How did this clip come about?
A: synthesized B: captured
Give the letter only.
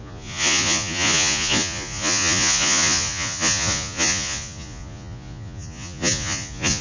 A